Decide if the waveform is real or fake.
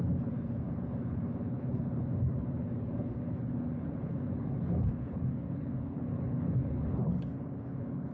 fake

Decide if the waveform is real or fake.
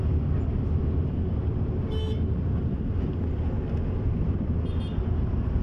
real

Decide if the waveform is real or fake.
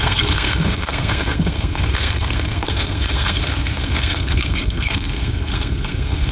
fake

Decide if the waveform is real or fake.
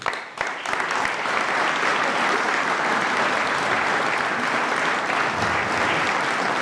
real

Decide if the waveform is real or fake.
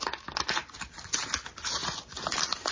real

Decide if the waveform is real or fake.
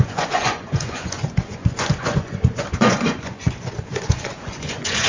fake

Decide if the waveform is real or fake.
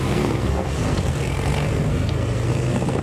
fake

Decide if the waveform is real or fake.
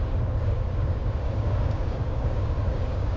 fake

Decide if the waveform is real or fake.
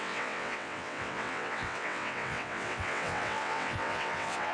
fake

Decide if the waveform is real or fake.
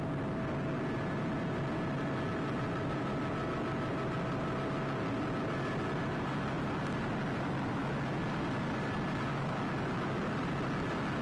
real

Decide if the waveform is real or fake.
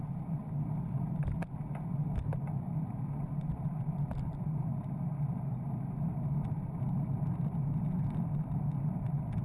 real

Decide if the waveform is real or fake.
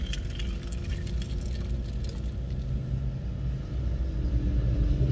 real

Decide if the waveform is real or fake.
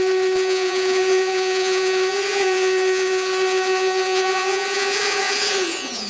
fake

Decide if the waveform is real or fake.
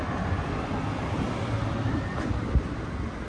fake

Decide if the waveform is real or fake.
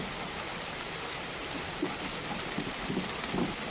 real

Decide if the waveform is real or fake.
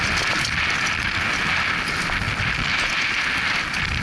real